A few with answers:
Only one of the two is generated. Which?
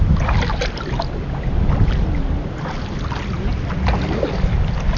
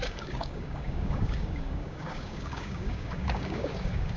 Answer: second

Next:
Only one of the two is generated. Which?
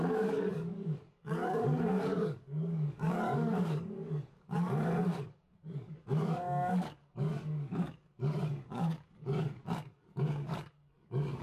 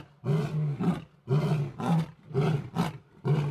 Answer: first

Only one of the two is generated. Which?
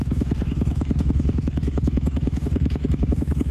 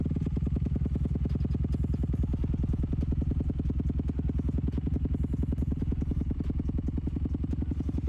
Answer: first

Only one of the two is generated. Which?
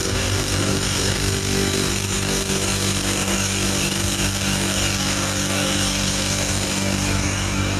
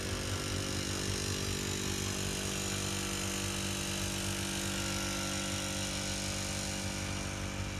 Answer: first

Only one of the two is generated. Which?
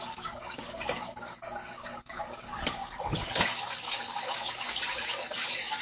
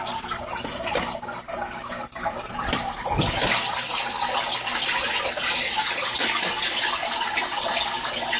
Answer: first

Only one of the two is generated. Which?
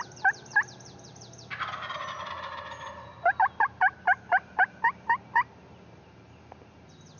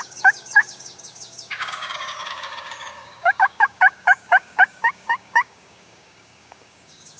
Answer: second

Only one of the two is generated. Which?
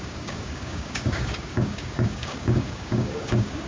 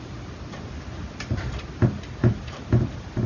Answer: first